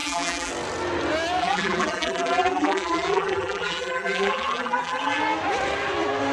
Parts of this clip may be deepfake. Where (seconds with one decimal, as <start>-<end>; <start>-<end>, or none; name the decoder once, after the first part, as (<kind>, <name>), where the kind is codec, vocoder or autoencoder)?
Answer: 0.0-0.5 (vocoder, BigVGAN v2); 1.4-5.2